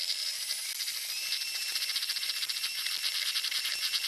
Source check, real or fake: fake